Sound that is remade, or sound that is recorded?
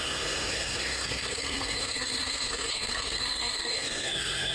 remade